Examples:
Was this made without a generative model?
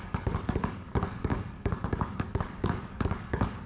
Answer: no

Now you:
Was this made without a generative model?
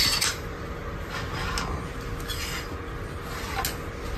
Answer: yes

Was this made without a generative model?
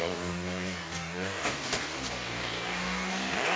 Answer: no